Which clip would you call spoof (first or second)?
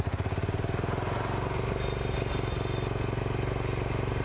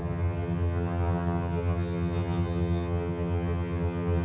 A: second